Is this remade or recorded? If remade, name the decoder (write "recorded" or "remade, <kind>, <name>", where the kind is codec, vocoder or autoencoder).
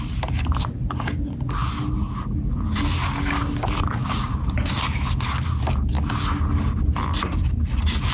recorded